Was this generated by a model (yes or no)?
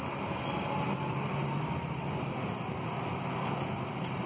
yes